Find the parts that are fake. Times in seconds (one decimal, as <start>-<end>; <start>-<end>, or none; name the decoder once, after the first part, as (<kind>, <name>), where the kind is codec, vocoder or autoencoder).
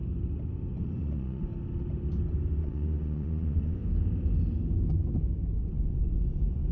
0.8-1.5 (vocoder, Vocos); 2.6-3.8; 5.7-6.7